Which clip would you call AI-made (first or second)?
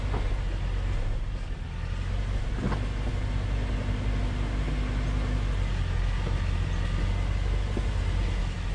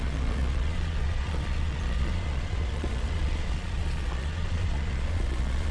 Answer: second